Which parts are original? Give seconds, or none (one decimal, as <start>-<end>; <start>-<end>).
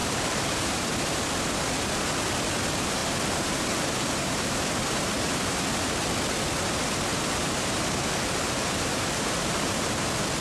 0.9-3.0; 4.6-7.1; 9.9-10.4